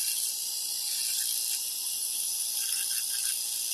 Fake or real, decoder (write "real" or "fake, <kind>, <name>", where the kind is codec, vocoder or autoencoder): real